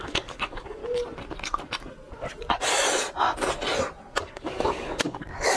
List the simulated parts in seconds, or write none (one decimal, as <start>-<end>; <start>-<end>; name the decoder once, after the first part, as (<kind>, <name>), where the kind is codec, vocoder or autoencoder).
0.0-0.8 (codec, DAC); 4.2-5.6